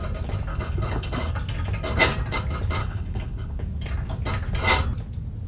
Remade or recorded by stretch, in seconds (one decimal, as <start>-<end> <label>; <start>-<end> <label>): 0.0-0.5 recorded; 0.5-1.3 remade; 1.3-2.8 recorded; 2.8-3.6 remade; 3.6-5.5 recorded

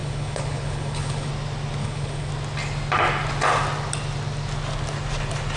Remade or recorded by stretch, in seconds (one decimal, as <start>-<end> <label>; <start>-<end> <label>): 0.0-1.3 remade; 1.3-1.8 recorded; 1.8-2.3 remade; 2.3-5.6 recorded

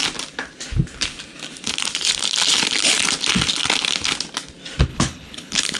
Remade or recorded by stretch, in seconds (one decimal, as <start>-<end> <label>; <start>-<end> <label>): 0.0-4.9 recorded; 4.9-5.8 remade